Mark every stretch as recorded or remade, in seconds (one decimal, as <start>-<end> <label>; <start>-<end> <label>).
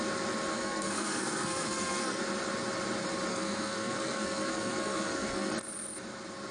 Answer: 0.0-0.5 recorded; 0.5-2.2 remade; 2.2-3.3 recorded; 3.3-5.5 remade; 5.5-6.5 recorded